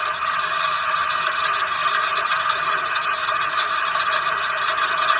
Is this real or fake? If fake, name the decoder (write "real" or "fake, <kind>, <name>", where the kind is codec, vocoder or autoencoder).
real